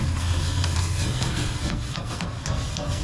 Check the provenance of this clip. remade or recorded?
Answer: remade